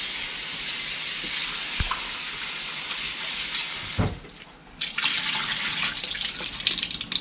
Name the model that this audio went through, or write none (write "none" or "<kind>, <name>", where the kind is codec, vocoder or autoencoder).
none